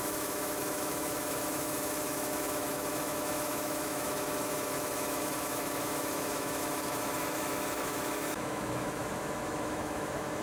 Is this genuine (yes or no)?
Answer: no